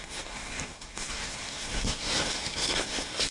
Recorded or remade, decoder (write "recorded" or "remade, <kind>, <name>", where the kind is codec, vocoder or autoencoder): remade, codec, SNAC